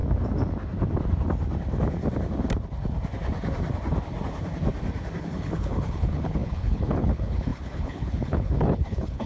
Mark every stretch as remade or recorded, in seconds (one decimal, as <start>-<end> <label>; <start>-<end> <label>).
0.0-5.2 recorded; 5.2-9.3 remade

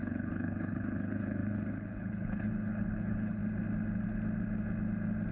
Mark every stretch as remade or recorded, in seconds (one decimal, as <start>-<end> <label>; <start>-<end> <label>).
0.0-3.4 remade; 3.4-5.3 recorded